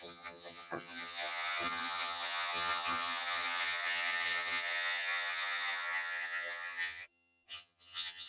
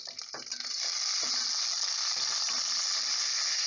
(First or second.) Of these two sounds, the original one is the second